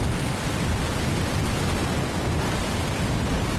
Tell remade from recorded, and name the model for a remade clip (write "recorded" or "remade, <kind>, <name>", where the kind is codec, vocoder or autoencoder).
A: recorded